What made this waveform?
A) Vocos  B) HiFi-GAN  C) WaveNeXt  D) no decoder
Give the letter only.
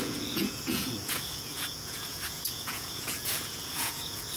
A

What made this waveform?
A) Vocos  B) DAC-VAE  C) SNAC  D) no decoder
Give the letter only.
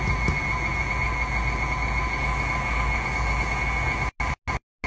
D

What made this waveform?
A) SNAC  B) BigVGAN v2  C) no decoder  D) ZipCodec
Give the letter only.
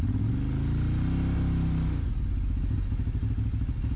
C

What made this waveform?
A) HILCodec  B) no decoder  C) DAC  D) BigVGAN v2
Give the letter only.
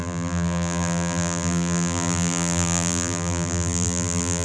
D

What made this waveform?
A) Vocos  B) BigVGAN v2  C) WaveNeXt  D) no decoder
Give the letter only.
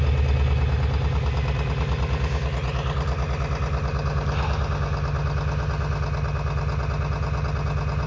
D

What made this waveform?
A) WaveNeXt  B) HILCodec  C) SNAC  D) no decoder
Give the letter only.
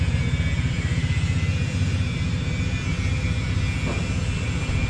D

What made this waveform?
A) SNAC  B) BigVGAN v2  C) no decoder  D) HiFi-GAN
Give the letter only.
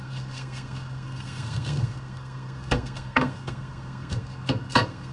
A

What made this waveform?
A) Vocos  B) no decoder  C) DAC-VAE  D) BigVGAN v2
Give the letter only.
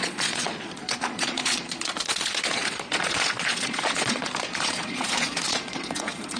A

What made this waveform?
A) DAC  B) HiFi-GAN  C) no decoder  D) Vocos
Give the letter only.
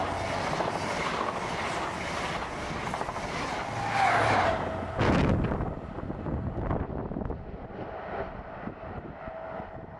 C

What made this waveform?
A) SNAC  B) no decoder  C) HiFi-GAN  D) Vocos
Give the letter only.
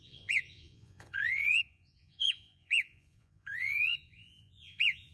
D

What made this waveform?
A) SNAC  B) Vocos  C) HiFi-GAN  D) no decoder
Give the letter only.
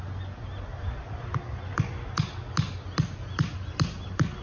D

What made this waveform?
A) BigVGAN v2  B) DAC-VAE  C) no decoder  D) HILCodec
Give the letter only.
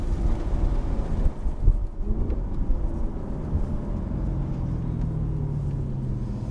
C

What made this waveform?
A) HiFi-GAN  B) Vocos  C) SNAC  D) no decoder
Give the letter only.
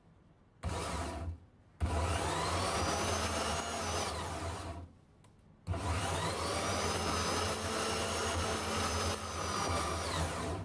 D